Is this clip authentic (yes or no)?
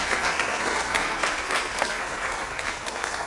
no